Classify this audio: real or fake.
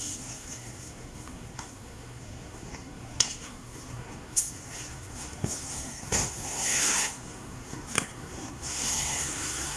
fake